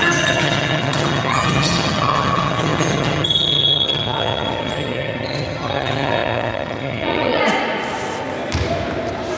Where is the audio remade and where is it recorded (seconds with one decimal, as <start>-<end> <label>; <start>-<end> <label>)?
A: 0.0-7.4 remade; 7.4-9.4 recorded